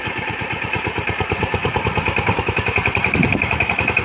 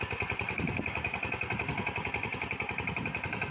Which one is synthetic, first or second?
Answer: first